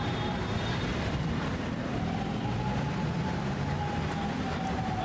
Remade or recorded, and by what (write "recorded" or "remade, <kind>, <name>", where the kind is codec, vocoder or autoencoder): remade, vocoder, BigVGAN v2